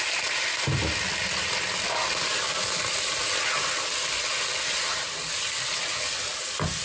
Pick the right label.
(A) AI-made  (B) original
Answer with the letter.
B